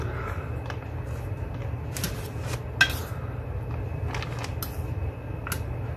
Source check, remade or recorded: recorded